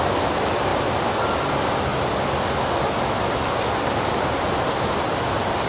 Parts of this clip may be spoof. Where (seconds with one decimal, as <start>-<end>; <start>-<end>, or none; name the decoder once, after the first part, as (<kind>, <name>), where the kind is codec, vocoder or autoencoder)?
none